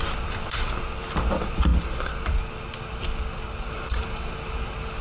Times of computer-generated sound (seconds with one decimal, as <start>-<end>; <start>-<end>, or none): 0.0-5.0